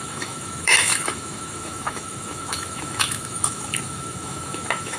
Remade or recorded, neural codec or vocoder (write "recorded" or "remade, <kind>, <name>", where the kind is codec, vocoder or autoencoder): remade, autoencoder, DAC-VAE